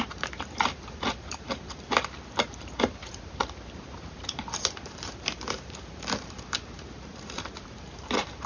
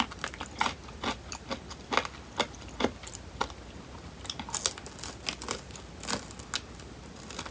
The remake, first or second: first